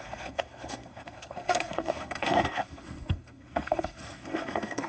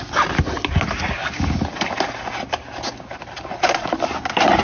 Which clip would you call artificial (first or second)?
first